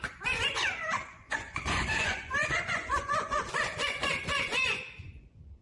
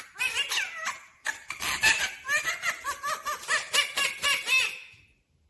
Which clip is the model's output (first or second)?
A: first